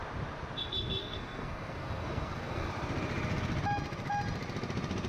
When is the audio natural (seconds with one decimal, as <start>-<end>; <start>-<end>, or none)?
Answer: 0.0-1.0; 2.7-5.1